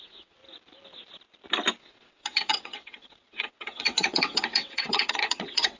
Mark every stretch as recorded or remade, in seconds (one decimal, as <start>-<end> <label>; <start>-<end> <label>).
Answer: 0.0-0.4 remade; 0.4-1.8 recorded; 1.8-5.8 remade